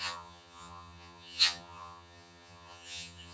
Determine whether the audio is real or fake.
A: fake